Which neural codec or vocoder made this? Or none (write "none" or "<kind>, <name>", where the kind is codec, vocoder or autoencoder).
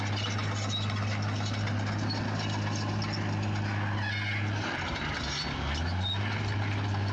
none